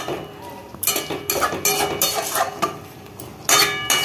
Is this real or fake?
real